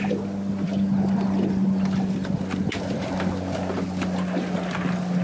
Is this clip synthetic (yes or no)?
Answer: no